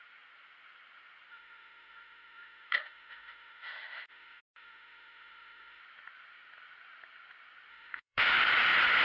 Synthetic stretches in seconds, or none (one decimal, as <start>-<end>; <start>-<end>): 1.3-5.8; 7.7-8.5